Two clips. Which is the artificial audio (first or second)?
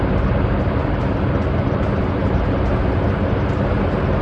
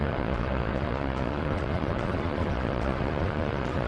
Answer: second